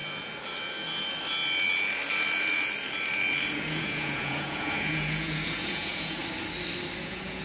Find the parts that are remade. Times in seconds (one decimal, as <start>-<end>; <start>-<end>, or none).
3.5-6.2; 7.0-7.4